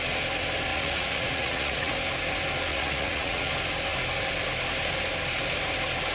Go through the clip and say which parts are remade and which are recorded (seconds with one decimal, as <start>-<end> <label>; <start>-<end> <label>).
0.0-0.7 recorded; 0.7-1.9 remade; 1.9-2.7 recorded; 2.7-3.5 remade; 3.5-6.1 recorded